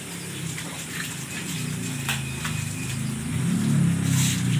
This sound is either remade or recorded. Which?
recorded